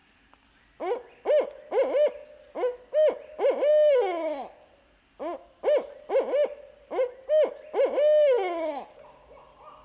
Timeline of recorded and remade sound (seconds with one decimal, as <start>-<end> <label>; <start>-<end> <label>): 0.0-9.8 recorded